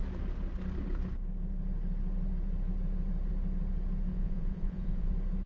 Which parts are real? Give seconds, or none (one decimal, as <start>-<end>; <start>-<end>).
0.0-4.1; 5.1-5.5